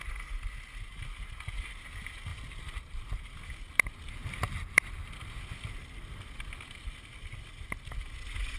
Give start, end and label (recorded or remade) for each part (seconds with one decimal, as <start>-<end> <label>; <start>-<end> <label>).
0.0-2.3 recorded; 2.3-3.7 remade; 3.7-4.2 recorded; 4.2-5.3 remade; 5.3-8.6 recorded